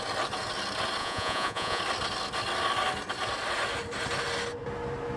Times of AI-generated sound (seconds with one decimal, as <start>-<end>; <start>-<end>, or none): 1.0-1.8